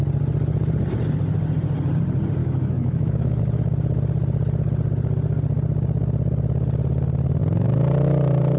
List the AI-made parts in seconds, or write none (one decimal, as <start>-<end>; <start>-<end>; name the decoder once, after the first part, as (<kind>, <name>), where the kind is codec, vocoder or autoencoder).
2.4-3.4 (autoencoder, DAC-VAE)